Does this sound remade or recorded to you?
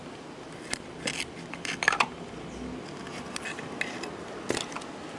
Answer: recorded